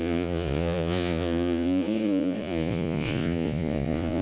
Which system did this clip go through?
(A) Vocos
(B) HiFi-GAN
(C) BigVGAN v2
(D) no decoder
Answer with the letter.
A